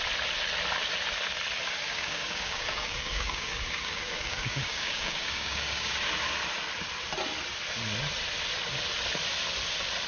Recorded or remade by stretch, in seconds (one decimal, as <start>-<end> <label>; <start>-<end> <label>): 0.0-1.8 recorded; 1.8-6.1 remade; 6.1-10.1 recorded